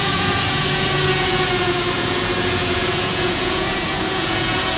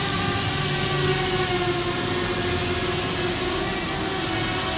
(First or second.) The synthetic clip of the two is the first